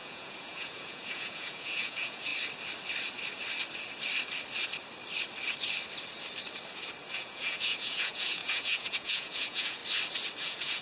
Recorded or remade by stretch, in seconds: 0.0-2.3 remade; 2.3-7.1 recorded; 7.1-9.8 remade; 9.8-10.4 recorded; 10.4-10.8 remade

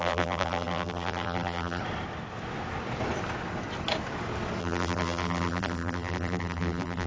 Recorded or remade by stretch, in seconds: 0.0-1.8 remade; 1.8-4.6 recorded; 4.6-7.1 remade